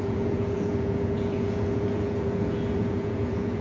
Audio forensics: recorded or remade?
remade